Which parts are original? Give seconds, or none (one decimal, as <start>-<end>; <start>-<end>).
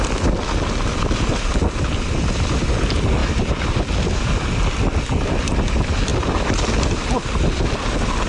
0.0-8.3